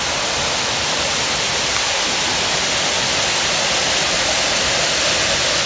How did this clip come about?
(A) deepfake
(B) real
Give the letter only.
B